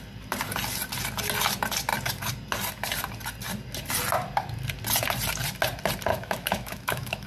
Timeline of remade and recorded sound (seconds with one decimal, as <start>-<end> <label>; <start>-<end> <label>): 0.0-6.1 recorded; 6.1-7.3 remade